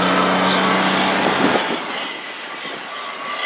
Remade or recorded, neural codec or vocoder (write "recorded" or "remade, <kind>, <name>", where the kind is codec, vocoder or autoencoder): recorded